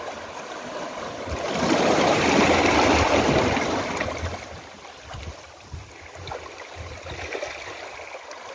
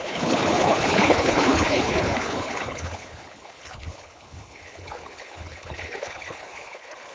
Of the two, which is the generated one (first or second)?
second